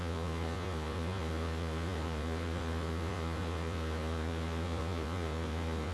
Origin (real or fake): fake